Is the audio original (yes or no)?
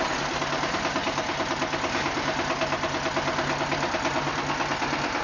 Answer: yes